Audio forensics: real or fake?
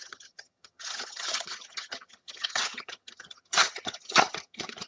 fake